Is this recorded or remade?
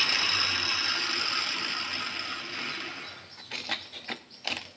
recorded